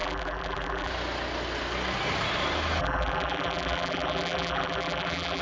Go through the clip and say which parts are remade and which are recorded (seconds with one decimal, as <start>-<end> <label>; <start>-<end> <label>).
0.0-0.9 remade; 0.9-2.8 recorded; 2.8-5.4 remade